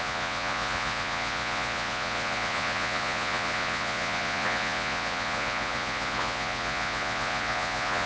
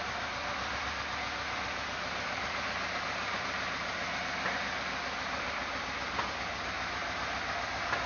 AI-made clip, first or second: first